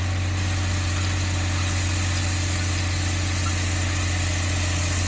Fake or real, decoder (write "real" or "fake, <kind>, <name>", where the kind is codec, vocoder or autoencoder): real